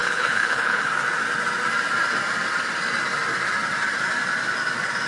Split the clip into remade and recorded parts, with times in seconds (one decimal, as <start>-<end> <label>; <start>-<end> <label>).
0.0-0.9 remade; 0.9-5.1 recorded